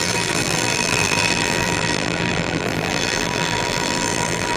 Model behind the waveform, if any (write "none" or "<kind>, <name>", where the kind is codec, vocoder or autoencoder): vocoder, BigVGAN v2